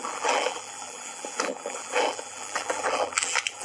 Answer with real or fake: fake